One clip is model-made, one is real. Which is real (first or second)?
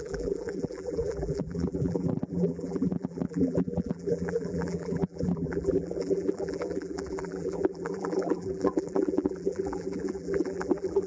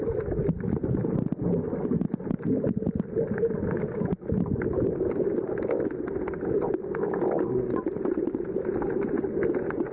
second